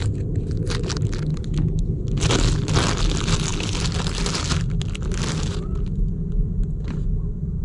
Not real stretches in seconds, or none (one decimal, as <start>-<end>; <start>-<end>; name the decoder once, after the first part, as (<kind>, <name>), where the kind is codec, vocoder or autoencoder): 1.3-2.0 (codec, HILCodec)